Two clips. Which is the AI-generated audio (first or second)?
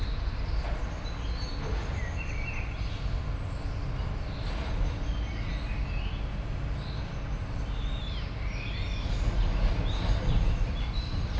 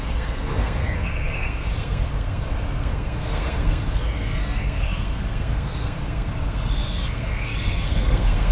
second